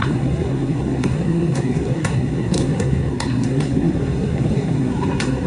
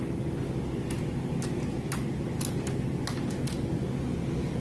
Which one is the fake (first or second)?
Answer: first